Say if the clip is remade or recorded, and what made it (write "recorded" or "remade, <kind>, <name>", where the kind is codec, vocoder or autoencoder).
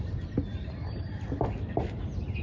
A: recorded